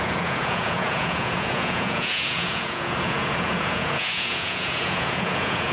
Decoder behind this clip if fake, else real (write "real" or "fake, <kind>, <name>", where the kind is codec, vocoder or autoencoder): fake, vocoder, Vocos